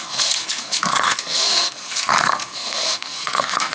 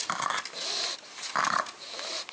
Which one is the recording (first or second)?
second